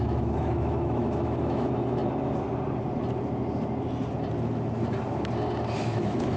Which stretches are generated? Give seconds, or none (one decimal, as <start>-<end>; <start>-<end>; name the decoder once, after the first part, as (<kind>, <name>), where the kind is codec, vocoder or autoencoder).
0.0-2.0 (autoencoder, DAC-VAE); 5.8-6.4